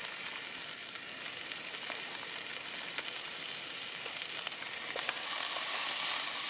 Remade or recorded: recorded